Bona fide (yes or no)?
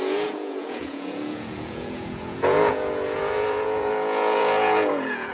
no